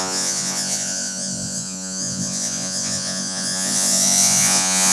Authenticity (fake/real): fake